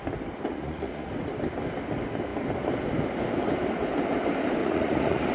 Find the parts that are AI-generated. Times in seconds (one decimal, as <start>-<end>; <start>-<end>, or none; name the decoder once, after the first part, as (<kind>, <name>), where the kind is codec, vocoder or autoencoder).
0.5-1.1 (vocoder, Vocos); 4.6-5.3